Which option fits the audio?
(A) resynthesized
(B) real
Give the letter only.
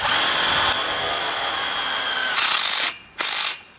B